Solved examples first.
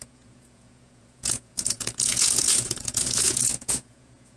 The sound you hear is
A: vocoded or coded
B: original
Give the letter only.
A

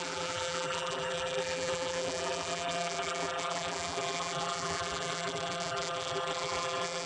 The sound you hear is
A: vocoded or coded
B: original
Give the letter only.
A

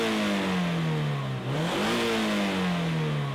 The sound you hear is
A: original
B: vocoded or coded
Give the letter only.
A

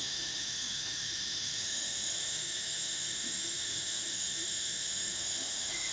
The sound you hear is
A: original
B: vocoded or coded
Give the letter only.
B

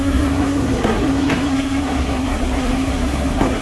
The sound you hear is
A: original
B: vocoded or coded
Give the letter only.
B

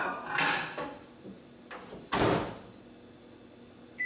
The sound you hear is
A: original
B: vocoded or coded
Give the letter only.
A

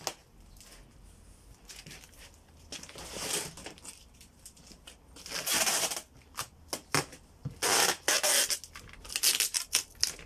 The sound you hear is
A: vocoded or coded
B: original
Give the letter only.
B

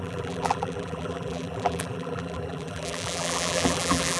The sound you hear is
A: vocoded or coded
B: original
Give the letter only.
A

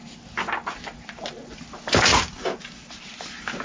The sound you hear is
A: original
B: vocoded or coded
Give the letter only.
A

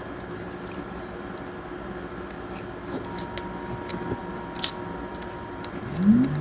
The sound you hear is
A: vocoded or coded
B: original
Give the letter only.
B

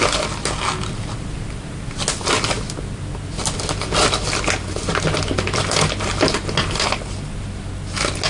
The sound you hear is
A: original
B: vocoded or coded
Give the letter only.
A